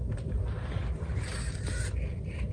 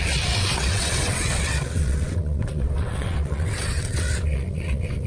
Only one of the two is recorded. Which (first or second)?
first